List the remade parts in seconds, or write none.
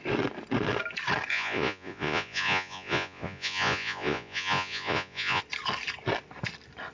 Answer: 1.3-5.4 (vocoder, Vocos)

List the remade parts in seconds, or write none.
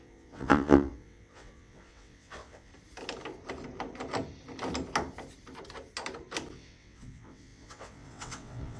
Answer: 0.0-2.7 (vocoder, WaveNeXt); 6.5-8.8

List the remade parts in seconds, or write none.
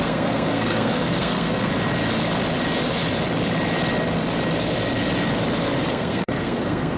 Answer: 0.0-1.7 (codec, SNAC); 5.9-7.0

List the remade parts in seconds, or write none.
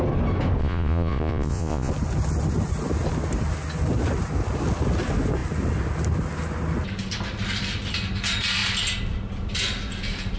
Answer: 0.6-1.9 (vocoder, Vocos)